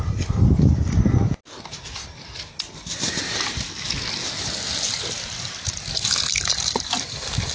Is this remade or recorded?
recorded